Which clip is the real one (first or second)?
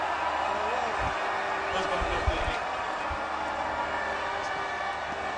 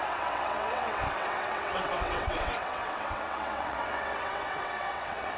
first